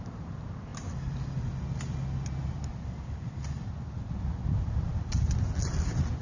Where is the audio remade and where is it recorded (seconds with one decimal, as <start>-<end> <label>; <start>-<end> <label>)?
0.0-6.2 recorded